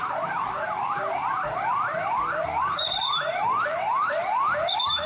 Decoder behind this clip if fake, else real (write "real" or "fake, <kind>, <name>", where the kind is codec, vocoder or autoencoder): fake, vocoder, BigVGAN v2